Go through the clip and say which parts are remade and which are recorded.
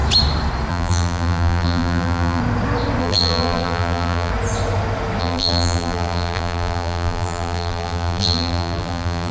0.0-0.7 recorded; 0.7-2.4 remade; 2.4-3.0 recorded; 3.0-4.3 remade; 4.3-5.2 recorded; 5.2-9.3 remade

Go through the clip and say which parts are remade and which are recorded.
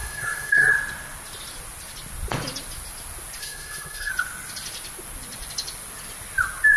0.0-0.7 remade; 0.7-3.4 recorded; 3.4-4.1 remade; 4.1-6.8 recorded